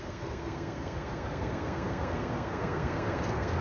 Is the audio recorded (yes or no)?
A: no